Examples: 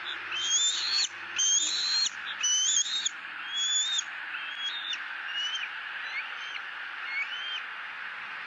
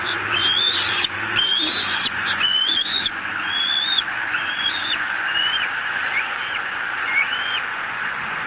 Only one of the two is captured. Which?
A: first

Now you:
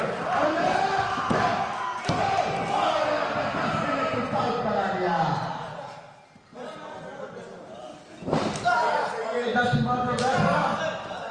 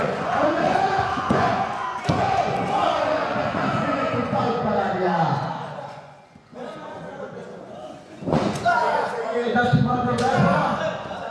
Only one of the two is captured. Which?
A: first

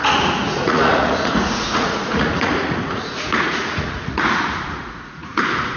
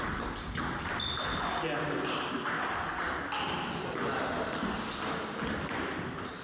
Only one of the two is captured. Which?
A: second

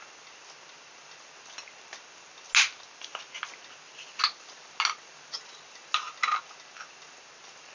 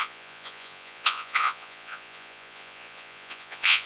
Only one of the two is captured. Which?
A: first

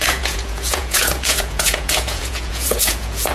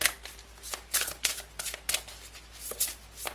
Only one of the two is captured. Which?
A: second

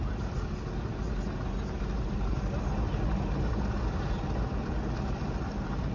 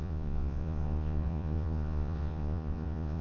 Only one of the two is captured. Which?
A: first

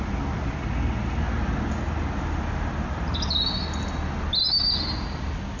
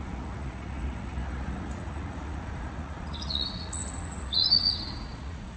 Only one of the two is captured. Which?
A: first